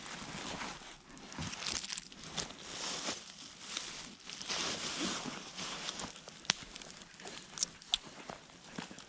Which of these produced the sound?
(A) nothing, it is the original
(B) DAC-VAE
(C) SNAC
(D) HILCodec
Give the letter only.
A